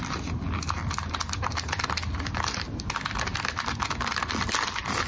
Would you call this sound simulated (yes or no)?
no